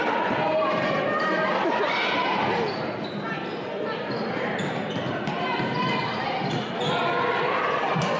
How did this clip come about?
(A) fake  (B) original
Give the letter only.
B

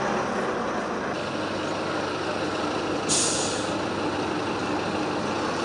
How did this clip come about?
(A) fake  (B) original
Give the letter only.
B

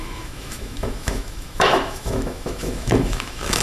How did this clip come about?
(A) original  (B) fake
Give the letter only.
B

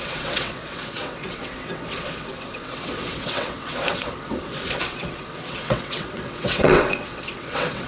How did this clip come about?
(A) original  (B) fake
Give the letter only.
B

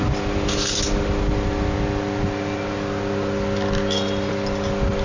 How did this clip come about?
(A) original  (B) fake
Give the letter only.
A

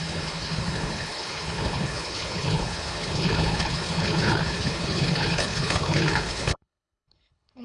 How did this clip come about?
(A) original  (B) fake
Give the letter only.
B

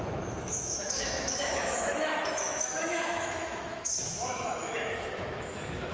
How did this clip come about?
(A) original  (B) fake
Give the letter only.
B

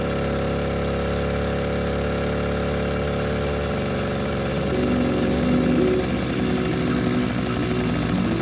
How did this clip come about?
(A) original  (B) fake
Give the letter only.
A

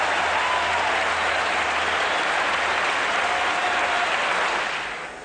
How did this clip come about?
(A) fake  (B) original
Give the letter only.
B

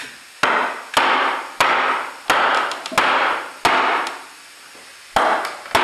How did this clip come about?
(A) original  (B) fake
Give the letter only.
A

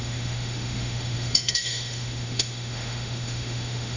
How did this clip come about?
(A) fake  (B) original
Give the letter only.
A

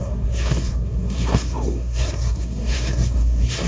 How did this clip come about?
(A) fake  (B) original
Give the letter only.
A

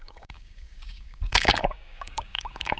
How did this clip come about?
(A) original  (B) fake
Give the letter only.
B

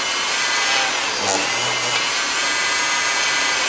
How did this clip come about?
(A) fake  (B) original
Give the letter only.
B